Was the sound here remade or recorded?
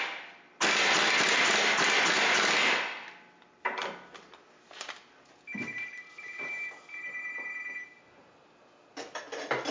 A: recorded